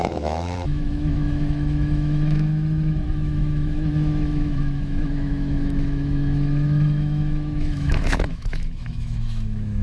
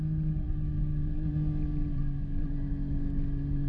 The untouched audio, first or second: second